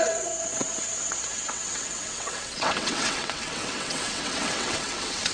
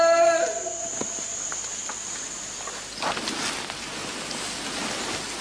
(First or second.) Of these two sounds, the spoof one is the first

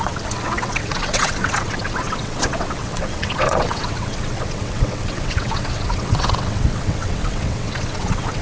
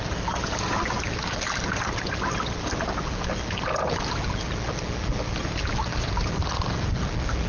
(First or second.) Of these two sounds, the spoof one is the first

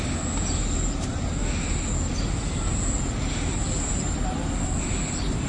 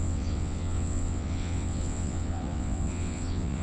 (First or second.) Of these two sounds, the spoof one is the second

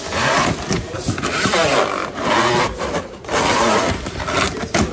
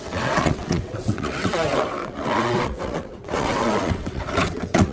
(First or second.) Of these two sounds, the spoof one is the second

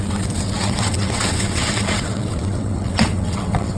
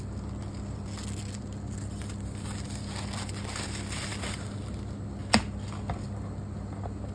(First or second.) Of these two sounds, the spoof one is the first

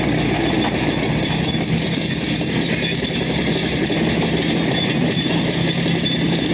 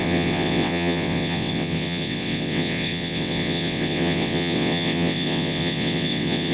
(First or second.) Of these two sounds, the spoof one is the second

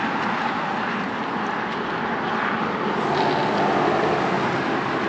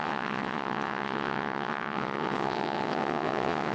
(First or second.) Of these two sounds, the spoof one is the second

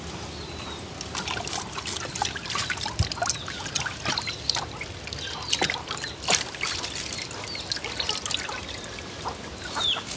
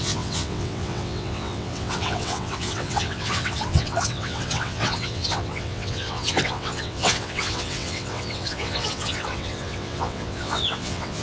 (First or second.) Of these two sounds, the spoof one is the second